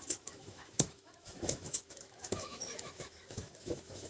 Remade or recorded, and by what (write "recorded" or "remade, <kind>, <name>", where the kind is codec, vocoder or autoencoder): remade, autoencoder, DAC-VAE